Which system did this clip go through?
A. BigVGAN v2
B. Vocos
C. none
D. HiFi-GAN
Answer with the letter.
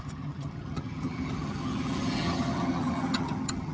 D